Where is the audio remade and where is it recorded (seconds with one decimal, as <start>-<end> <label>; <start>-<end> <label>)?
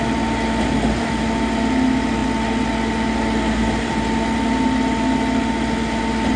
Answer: 0.0-6.4 recorded